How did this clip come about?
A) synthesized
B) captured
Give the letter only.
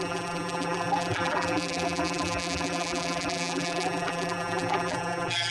A